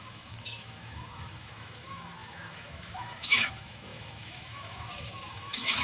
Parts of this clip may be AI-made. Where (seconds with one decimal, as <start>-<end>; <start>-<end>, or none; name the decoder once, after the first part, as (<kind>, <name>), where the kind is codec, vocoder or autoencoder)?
0.0-5.8 (autoencoder, DAC-VAE)